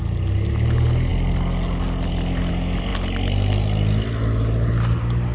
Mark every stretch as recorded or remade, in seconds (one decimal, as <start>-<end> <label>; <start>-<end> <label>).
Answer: 0.0-5.3 recorded